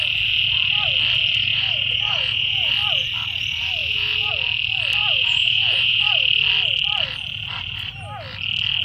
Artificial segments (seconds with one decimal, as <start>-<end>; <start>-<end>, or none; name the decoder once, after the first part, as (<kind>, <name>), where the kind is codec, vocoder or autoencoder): 1.5-2.7 (vocoder, Vocos); 3.8-4.3; 5.0-6.0